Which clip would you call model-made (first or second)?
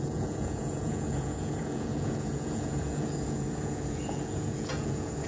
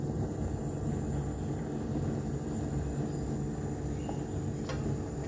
first